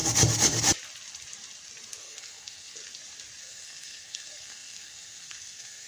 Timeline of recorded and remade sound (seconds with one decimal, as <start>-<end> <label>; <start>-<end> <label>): 0.0-2.0 recorded; 2.0-2.8 remade; 2.8-3.4 recorded; 3.4-5.9 remade